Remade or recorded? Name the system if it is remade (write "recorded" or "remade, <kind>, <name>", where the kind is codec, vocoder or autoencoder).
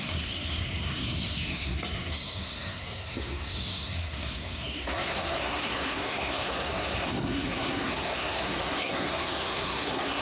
remade, codec, SNAC